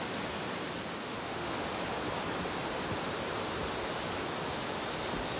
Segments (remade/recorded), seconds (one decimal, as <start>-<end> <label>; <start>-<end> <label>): 0.0-1.0 recorded; 1.0-1.5 remade; 1.5-5.4 recorded